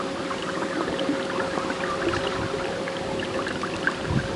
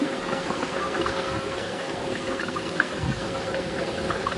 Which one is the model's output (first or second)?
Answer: second